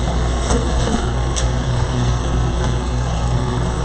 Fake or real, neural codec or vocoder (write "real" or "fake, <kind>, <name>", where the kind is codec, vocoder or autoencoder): fake, codec, SNAC